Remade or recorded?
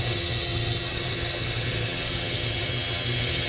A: remade